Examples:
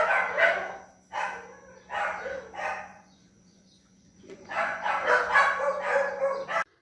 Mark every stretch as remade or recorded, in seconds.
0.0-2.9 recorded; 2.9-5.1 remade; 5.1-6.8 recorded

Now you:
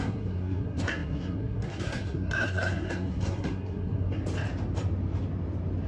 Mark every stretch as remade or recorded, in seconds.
0.0-4.2 remade; 4.2-5.9 recorded

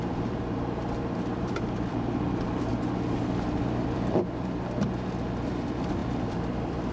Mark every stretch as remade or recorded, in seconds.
0.0-2.7 remade; 2.7-3.6 recorded; 3.6-6.9 remade

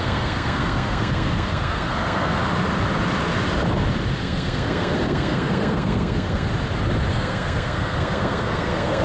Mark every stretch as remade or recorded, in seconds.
0.0-2.4 remade; 2.4-4.2 recorded; 4.2-6.5 remade; 6.5-7.1 recorded; 7.1-9.0 remade